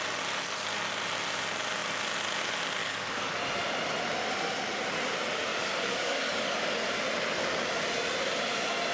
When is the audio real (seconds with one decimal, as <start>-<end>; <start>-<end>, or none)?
0.0-2.8; 3.4-5.5; 6.7-8.9